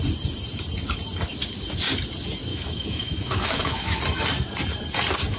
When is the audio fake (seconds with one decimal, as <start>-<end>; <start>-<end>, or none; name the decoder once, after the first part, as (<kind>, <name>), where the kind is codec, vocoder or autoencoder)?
2.5-4.0 (autoencoder, DAC-VAE)